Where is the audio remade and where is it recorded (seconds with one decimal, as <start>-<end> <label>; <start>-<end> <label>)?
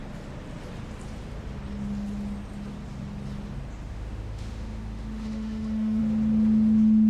0.0-3.9 recorded; 3.9-6.0 remade; 6.0-7.1 recorded